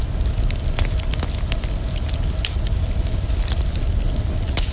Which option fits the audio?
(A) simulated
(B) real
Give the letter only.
B